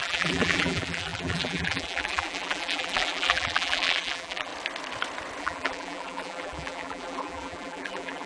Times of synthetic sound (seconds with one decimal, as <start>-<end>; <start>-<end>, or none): 0.0-4.5; 5.4-8.3